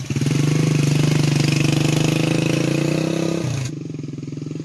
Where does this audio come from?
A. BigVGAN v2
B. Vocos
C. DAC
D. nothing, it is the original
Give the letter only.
D